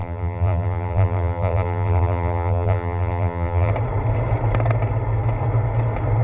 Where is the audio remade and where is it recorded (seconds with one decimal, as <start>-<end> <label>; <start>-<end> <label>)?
0.0-3.7 remade; 3.7-6.2 recorded

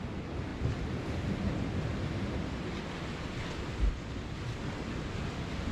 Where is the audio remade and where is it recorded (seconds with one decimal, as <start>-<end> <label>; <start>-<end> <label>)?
0.0-5.7 recorded

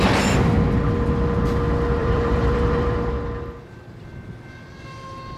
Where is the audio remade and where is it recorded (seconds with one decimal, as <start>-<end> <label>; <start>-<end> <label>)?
0.0-2.0 recorded; 2.0-3.1 remade; 3.1-5.4 recorded

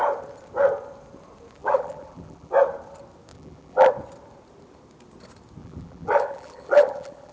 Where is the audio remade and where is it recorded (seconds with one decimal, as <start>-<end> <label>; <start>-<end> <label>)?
0.0-1.6 recorded; 1.6-2.5 remade; 2.5-3.3 recorded; 3.3-3.9 remade; 3.9-5.6 recorded; 5.6-7.3 remade